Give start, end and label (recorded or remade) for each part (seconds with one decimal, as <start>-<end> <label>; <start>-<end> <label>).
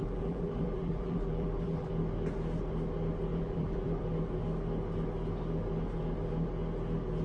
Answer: 0.0-1.9 remade; 1.9-3.3 recorded; 3.3-4.0 remade; 4.0-7.2 recorded